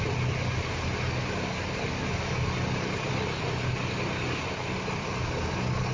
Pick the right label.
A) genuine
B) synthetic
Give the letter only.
A